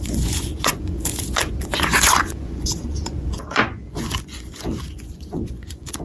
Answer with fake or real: fake